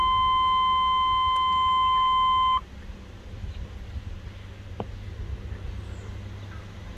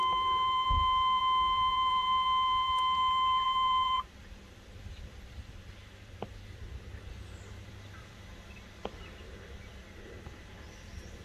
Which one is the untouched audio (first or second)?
first